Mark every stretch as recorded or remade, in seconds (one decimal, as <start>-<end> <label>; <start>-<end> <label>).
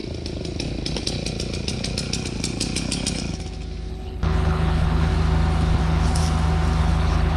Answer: 0.0-3.9 recorded; 3.9-5.1 remade; 5.1-5.8 recorded; 5.8-6.2 remade; 6.2-6.8 recorded; 6.8-7.4 remade